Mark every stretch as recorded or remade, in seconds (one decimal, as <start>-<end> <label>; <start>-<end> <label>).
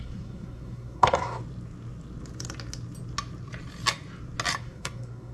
0.0-1.4 remade; 1.4-4.6 recorded; 4.6-5.3 remade